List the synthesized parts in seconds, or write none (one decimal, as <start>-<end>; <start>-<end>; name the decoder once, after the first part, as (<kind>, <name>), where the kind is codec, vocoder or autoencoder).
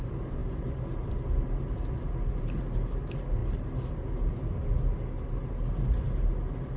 none